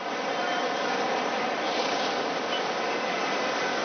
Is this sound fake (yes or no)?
no